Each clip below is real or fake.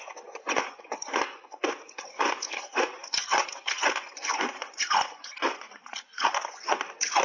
fake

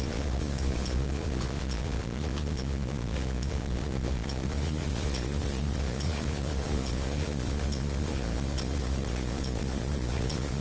fake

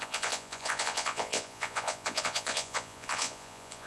fake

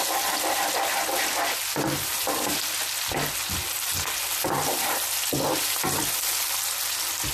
real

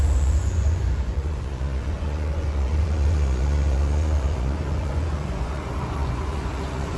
fake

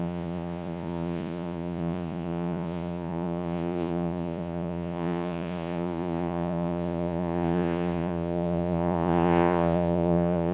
fake